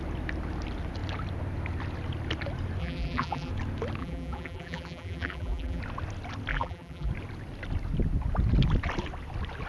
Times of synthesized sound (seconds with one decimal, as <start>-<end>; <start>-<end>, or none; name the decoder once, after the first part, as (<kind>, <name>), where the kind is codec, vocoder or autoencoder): 2.8-3.5 (vocoder, BigVGAN v2); 4.0-5.8; 6.5-7.1

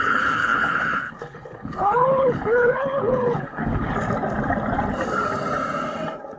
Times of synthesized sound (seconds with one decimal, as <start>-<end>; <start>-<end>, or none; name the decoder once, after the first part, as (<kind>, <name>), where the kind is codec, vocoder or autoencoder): 0.0-3.9 (codec, HILCodec)